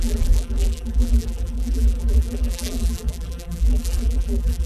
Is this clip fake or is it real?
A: fake